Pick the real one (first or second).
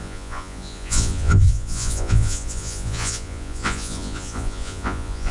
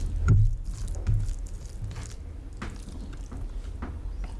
second